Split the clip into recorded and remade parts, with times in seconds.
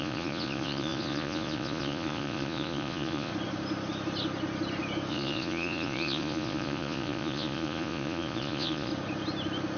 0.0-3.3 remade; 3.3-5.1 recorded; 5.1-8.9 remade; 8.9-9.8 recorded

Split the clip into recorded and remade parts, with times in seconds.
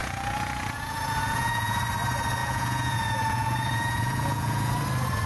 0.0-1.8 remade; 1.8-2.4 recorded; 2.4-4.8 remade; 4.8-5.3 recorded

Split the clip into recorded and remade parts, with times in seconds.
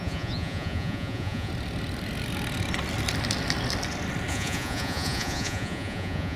0.0-1.5 remade; 1.5-4.3 recorded; 4.3-6.4 remade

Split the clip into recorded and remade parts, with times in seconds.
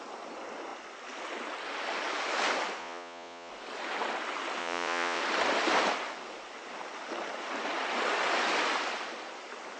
0.0-2.8 recorded; 2.8-3.5 remade; 3.5-4.6 recorded; 4.6-5.2 remade; 5.2-9.8 recorded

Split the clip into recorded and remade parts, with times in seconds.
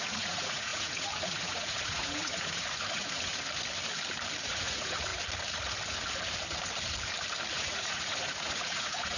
0.0-3.3 remade; 3.3-4.4 recorded; 4.4-5.1 remade; 5.1-7.5 recorded; 7.5-9.2 remade